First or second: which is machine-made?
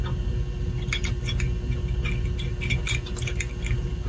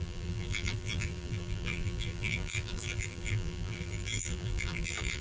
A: second